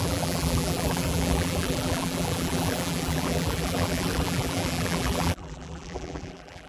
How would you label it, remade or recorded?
remade